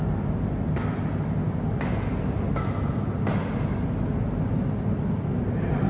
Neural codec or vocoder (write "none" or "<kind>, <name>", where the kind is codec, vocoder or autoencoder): none